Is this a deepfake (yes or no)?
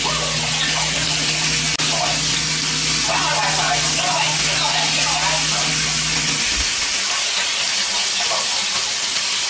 no